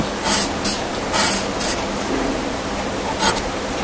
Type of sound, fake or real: real